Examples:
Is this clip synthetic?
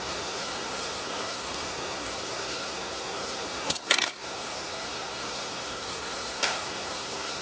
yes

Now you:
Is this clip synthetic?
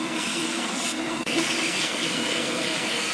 yes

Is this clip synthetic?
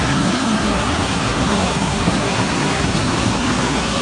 yes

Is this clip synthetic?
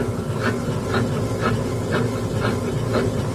no